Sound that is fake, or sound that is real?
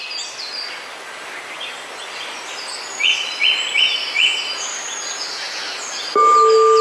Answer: real